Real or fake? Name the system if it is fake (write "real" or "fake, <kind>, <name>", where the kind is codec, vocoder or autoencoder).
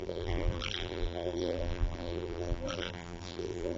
fake, vocoder, BigVGAN v2